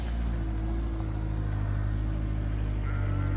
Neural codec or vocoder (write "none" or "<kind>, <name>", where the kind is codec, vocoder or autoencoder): none